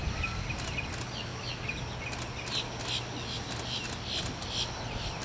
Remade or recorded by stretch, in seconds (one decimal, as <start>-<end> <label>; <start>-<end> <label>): 0.0-5.2 recorded